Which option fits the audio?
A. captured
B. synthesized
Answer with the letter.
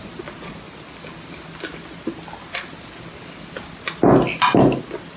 A